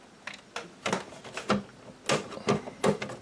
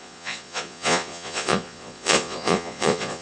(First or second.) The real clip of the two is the first